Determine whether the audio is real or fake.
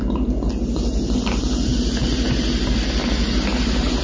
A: real